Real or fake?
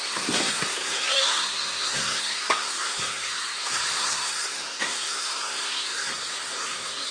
fake